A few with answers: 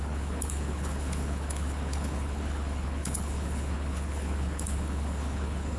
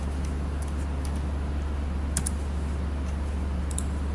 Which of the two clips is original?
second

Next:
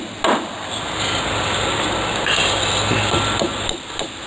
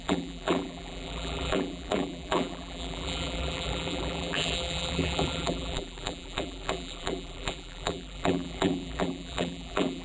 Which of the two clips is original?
first